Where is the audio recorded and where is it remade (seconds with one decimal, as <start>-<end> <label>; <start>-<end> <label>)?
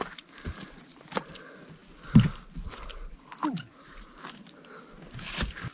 0.0-5.7 recorded